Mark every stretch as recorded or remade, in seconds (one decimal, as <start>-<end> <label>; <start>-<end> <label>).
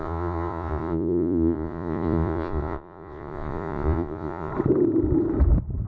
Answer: 0.0-4.5 remade; 4.5-5.9 recorded